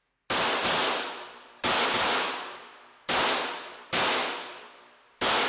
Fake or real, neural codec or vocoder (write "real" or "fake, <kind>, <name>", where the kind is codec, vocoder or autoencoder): real